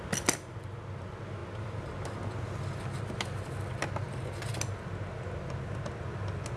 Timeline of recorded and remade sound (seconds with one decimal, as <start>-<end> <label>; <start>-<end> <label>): 0.0-6.6 recorded